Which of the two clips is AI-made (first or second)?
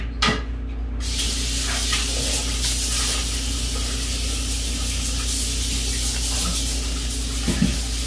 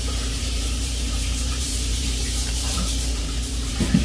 second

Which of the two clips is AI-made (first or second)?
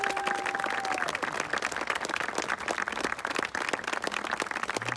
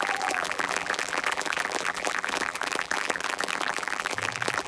second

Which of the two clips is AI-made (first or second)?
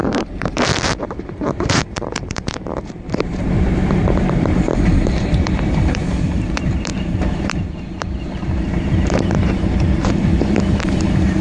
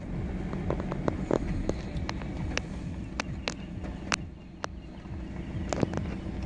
first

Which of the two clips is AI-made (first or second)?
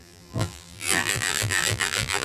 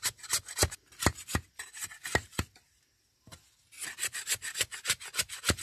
first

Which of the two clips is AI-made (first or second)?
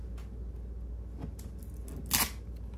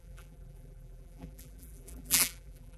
second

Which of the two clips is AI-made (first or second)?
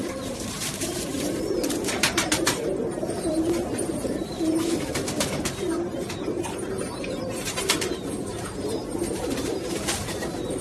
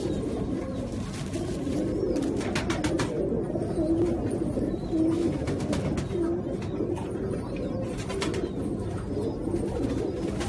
first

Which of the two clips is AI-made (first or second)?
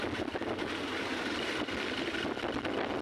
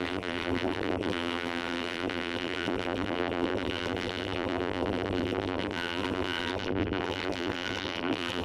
second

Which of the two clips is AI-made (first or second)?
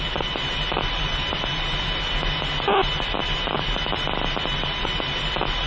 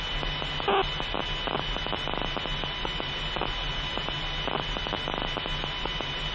first